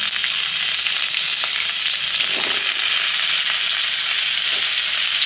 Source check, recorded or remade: recorded